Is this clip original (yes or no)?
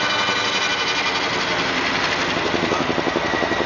yes